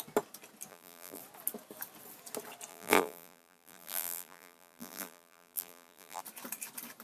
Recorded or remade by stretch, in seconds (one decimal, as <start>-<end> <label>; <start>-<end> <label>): 0.0-0.7 recorded; 0.7-1.2 remade; 1.2-2.7 recorded; 2.7-6.2 remade; 6.2-7.0 recorded